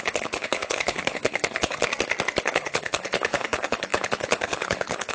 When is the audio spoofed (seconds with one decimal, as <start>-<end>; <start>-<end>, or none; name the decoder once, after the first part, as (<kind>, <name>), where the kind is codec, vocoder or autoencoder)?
0.0-1.8 (codec, HILCodec); 2.4-5.1